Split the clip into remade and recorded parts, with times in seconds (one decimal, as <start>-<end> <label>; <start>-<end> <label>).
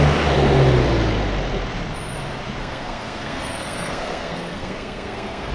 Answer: 0.0-2.6 recorded; 2.6-5.5 remade